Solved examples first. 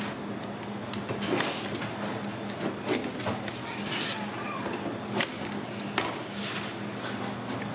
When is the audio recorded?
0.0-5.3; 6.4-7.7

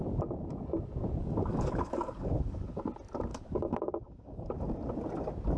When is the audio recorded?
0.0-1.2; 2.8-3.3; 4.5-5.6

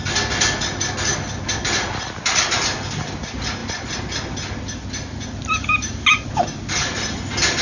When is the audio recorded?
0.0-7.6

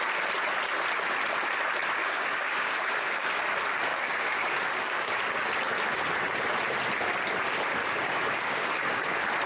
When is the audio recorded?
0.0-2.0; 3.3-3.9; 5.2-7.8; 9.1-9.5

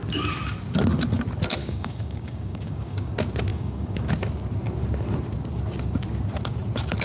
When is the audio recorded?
0.0-1.6; 3.1-3.5; 4.1-7.0

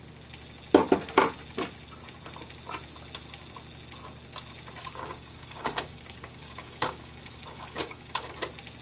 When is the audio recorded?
0.0-4.8; 8.4-8.8